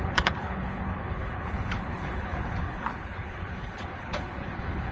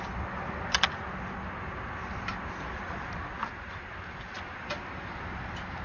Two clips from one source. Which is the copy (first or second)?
first